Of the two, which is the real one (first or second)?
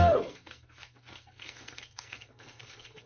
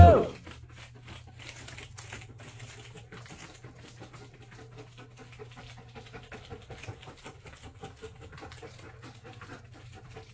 second